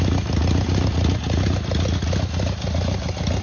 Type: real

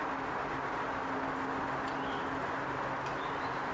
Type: real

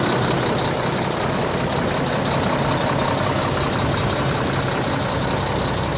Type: real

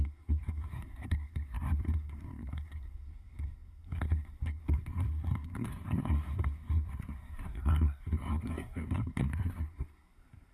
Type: fake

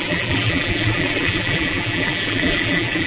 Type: fake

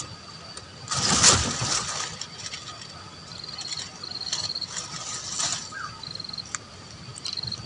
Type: real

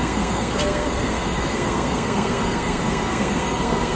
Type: fake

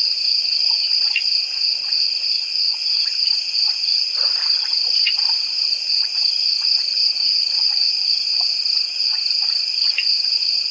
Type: fake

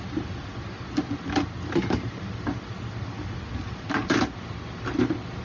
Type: real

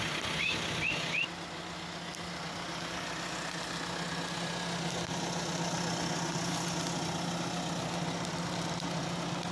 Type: real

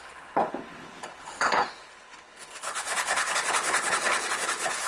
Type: fake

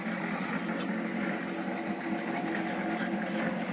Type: real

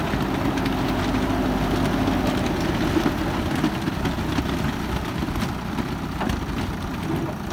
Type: real